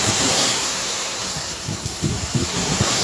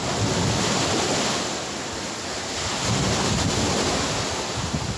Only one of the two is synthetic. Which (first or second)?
first